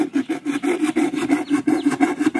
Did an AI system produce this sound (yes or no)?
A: no